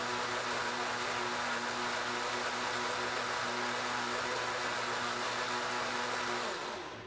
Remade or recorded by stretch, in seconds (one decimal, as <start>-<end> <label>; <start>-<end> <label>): 0.0-7.1 recorded